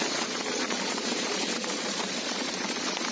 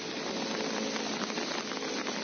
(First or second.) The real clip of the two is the second